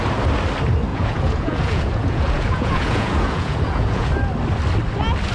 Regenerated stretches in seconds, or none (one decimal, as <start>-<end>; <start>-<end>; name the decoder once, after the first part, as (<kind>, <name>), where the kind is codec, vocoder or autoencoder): 0.9-4.1 (vocoder, Vocos)

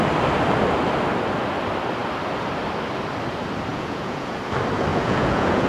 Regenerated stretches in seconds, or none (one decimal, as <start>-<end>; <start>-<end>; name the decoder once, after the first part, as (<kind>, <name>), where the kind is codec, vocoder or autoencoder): 3.7-4.4 (vocoder, Vocos); 4.9-5.7